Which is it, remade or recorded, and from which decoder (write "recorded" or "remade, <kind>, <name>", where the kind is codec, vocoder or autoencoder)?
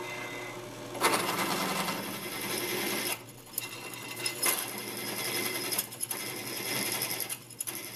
recorded